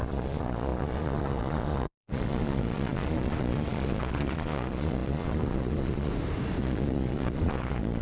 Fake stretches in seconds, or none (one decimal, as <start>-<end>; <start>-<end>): 0.0-6.1; 6.6-8.0